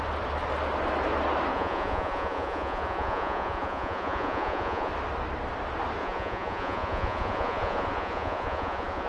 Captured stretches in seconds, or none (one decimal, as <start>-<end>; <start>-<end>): 0.0-1.5; 4.9-6.0